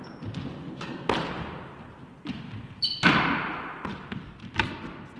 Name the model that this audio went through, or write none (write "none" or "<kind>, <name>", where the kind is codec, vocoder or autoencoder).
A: none